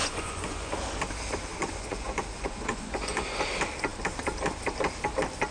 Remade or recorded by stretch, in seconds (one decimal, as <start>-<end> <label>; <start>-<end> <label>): 0.0-0.7 remade; 0.7-1.6 recorded; 1.6-3.4 remade; 3.4-5.5 recorded